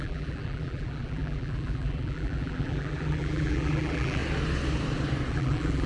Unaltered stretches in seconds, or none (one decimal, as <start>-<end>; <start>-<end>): 4.2-5.3